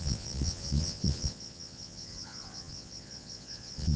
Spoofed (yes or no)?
yes